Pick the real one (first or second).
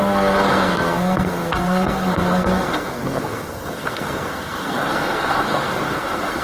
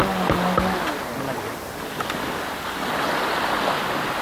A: second